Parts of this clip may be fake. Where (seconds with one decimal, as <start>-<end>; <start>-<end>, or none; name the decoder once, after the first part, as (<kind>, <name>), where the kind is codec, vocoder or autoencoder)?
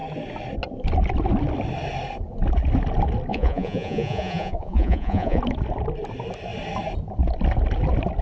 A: 3.3-5.4 (vocoder, Vocos)